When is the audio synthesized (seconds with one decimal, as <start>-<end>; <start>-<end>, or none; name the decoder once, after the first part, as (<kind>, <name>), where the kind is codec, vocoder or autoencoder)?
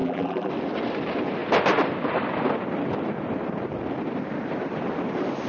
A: 0.0-0.5 (vocoder, BigVGAN v2)